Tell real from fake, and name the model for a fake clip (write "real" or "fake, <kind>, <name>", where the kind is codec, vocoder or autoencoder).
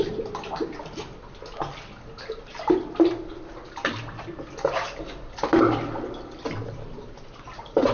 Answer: real